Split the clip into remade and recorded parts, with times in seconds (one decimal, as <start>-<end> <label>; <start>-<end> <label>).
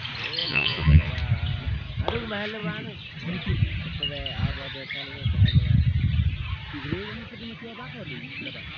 0.0-0.4 recorded; 0.4-1.1 remade; 1.1-8.8 recorded